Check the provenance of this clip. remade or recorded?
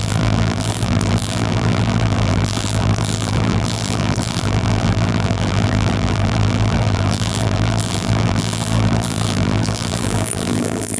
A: remade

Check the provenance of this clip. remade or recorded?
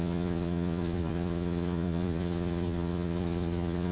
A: remade